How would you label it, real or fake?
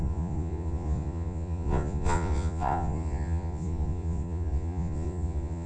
fake